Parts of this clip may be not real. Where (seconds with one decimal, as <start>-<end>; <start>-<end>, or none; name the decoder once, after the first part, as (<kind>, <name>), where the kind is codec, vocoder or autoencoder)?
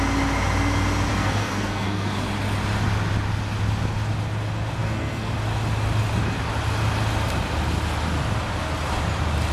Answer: 1.1-2.2 (codec, SNAC); 4.8-5.3